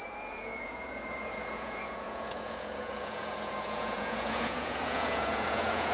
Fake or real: fake